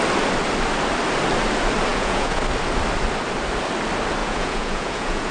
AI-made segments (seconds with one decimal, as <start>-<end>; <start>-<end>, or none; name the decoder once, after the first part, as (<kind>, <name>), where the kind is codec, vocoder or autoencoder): 1.9-2.4 (vocoder, Vocos); 4.2-5.3